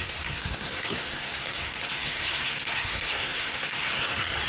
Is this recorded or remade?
remade